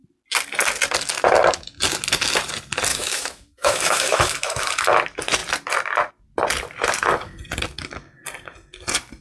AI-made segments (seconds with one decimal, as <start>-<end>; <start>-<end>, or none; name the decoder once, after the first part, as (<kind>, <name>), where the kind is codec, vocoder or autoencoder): 2.9-4.7 (autoencoder, DAC-VAE)